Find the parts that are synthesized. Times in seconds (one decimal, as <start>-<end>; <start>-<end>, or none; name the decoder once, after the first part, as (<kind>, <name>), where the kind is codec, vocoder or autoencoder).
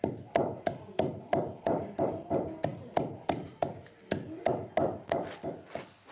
none